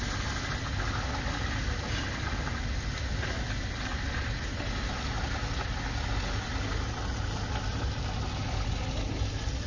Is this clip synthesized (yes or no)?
no